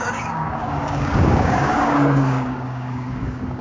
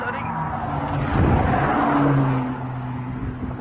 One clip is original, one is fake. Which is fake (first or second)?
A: first